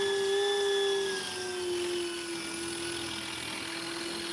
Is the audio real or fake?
real